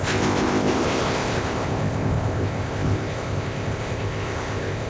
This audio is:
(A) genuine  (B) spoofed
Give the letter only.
B